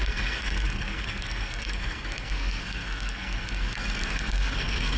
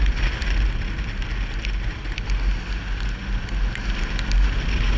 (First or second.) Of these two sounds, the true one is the second